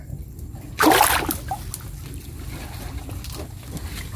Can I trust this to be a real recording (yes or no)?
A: yes